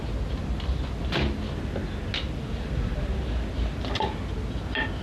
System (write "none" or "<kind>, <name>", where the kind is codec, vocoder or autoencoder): none